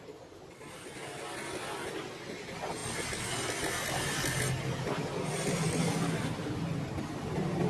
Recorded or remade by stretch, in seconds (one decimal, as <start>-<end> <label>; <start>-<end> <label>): 0.0-7.7 recorded